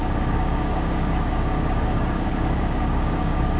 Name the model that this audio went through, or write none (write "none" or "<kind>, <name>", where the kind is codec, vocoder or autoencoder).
codec, DAC